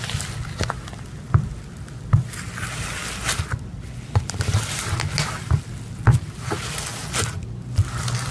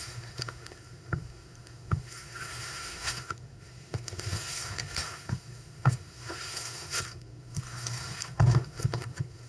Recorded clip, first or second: first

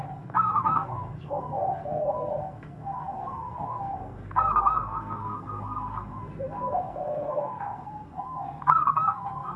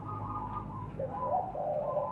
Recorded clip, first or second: second